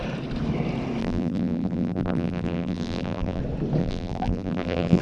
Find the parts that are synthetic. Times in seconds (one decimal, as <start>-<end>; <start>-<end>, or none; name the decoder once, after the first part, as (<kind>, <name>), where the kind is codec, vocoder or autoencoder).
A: 1.0-3.4 (vocoder, BigVGAN v2); 3.8-5.0